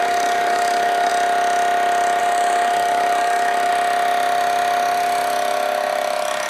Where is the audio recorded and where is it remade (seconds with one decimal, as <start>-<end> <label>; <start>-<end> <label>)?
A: 0.0-1.1 remade; 1.1-2.2 recorded; 2.2-3.7 remade; 3.7-6.5 recorded